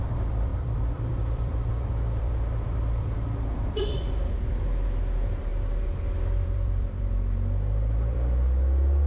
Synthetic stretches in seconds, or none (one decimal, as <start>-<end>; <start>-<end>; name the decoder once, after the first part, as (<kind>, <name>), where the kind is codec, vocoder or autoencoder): 0.0-5.5 (vocoder, BigVGAN v2); 6.2-9.1